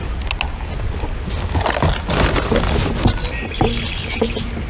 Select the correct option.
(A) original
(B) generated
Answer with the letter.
A